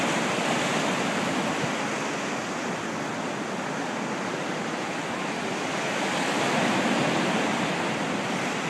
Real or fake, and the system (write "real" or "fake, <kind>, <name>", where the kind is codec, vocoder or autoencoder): real